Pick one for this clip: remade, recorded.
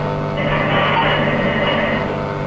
recorded